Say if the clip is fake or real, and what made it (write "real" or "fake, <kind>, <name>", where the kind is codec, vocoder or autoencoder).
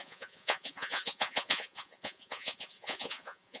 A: fake, vocoder, Vocos